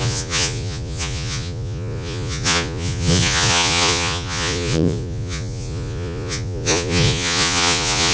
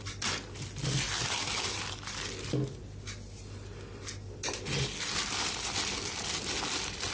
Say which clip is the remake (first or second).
first